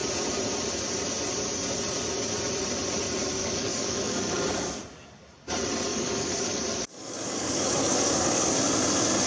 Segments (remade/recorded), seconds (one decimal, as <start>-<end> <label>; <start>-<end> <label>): 0.0-3.4 recorded; 3.4-4.3 remade; 4.3-5.9 recorded; 5.9-8.5 remade; 8.5-9.3 recorded